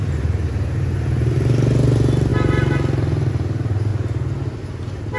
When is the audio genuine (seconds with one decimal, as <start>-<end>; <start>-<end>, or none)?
2.3-3.3; 3.9-4.5